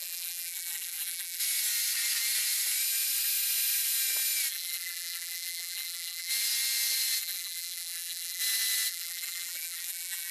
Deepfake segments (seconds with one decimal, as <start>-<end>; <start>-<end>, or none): 0.0-1.4; 4.5-6.3; 7.2-8.4; 8.9-10.3